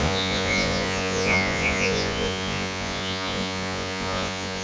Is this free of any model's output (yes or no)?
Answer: no